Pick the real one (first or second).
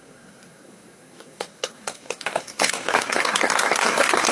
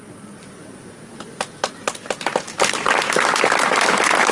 second